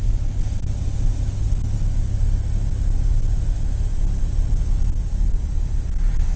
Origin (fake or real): real